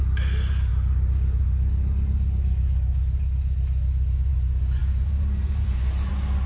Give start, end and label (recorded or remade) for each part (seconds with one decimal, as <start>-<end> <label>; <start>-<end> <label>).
0.0-4.8 recorded; 4.8-6.1 remade; 6.1-6.5 recorded